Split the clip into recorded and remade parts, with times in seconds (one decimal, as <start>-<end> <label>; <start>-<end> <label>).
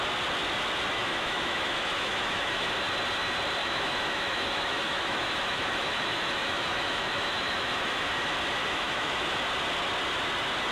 0.0-1.0 recorded; 1.0-2.7 remade; 2.7-3.6 recorded; 3.6-8.1 remade; 8.1-8.6 recorded; 8.6-9.4 remade; 9.4-10.7 recorded